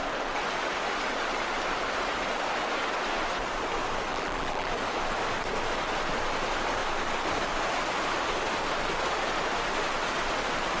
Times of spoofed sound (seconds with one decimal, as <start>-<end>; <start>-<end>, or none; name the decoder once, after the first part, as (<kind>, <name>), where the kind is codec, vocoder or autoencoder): 4.1-4.7 (vocoder, BigVGAN v2)